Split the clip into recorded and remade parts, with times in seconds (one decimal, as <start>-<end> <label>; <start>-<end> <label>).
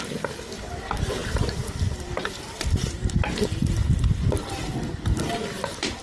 0.0-6.0 recorded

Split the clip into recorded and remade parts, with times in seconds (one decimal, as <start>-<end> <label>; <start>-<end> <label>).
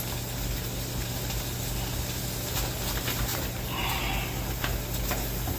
0.0-3.3 recorded; 3.3-4.0 remade; 4.0-5.6 recorded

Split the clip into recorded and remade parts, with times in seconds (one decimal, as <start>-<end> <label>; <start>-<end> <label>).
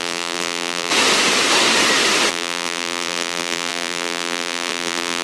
0.0-0.9 remade; 0.9-2.3 recorded; 2.3-5.2 remade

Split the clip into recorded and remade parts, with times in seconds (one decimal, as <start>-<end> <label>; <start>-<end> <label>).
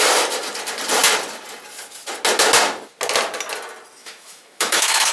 0.0-4.0 recorded; 4.0-5.1 remade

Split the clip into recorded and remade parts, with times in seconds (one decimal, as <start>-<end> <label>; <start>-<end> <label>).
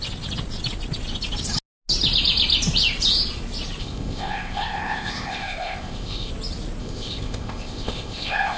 0.0-3.8 recorded; 3.8-6.3 remade; 6.3-6.8 recorded; 6.8-8.6 remade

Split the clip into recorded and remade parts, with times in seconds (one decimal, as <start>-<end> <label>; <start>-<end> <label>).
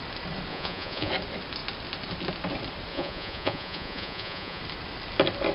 0.0-0.5 recorded; 0.5-1.1 remade; 1.1-2.9 recorded; 2.9-4.6 remade; 4.6-5.5 recorded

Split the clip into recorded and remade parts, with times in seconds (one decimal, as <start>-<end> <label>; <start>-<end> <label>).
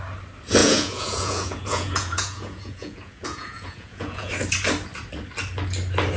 0.0-0.6 recorded; 0.6-4.3 remade; 4.3-6.2 recorded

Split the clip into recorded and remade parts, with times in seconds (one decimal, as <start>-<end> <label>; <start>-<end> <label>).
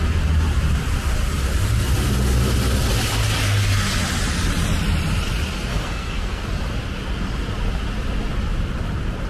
0.0-5.7 recorded; 5.7-6.4 remade; 6.4-9.3 recorded